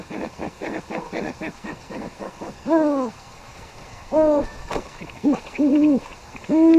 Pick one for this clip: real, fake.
fake